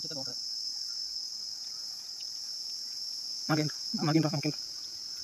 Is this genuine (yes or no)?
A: no